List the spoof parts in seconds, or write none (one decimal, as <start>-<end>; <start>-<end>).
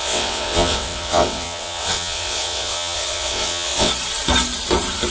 0.0-3.9